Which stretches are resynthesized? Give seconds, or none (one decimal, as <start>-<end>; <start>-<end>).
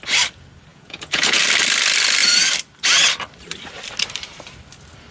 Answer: 0.7-1.4